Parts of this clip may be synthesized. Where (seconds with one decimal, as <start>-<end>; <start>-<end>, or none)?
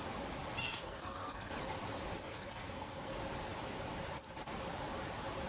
0.6-1.5; 2.2-3.1